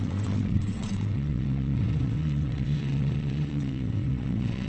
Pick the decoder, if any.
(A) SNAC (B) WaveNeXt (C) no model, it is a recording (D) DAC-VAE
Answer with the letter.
B